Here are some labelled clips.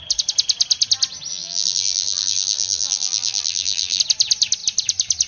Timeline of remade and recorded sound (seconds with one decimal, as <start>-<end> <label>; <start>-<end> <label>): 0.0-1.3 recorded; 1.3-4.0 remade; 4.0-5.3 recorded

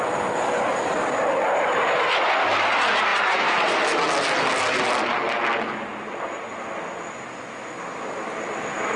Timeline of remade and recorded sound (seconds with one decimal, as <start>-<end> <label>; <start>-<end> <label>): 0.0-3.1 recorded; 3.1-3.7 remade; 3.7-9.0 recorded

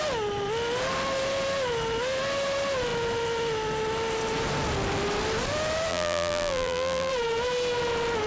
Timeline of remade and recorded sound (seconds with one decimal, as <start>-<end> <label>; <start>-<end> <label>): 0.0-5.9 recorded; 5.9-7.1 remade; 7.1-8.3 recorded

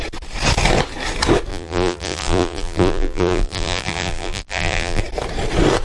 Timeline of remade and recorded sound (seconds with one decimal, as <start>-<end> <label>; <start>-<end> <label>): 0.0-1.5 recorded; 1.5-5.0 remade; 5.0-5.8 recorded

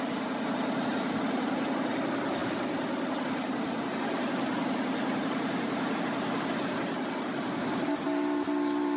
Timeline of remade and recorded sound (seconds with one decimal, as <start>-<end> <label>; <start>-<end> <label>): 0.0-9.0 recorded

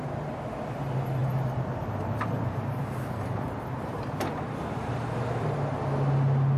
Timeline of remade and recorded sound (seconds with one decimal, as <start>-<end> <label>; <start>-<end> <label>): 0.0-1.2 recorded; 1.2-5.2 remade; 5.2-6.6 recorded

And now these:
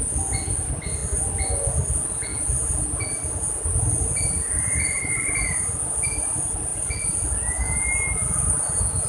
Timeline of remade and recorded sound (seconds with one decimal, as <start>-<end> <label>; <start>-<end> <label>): 0.0-6.7 recorded; 6.7-7.4 remade; 7.4-9.1 recorded